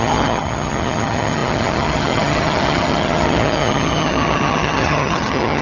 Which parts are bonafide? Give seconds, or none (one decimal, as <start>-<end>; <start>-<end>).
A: none